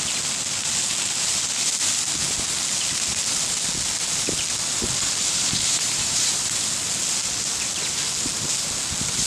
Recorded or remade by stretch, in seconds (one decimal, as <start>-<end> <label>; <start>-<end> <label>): 0.0-5.2 recorded; 5.2-6.3 remade; 6.3-9.3 recorded